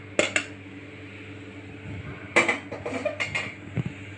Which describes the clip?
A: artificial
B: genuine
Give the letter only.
B